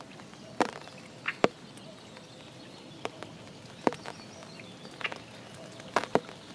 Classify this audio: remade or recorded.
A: recorded